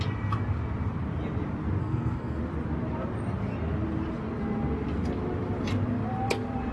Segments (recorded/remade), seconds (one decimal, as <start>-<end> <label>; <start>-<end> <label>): 0.0-1.8 recorded; 1.8-2.4 remade; 2.4-6.7 recorded